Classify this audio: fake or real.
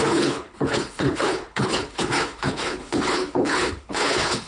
fake